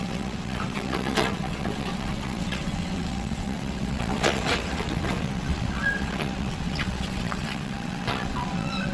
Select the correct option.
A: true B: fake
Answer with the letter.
B